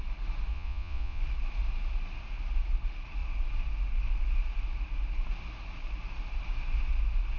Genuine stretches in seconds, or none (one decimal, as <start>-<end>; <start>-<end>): 0.0-0.5; 1.2-7.4

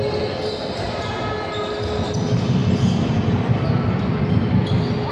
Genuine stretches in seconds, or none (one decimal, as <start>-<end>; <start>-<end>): 0.0-5.1

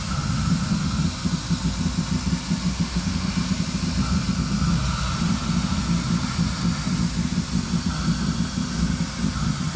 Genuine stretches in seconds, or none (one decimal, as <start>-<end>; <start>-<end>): 0.0-2.7; 3.3-9.8